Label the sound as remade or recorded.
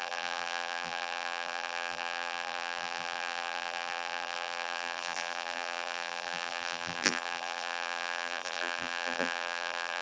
remade